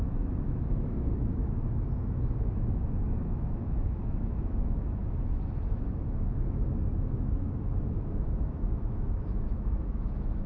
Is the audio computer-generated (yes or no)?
yes